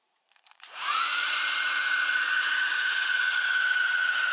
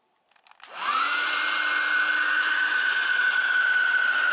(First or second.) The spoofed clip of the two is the first